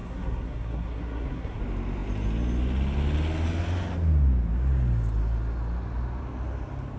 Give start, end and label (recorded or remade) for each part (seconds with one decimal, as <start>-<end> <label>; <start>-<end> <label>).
0.0-1.6 remade; 1.6-7.0 recorded